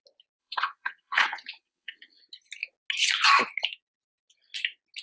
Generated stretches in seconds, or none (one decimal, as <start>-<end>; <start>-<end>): 0.4-2.2